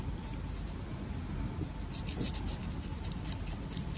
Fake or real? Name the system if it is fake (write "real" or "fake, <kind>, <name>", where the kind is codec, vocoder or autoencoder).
real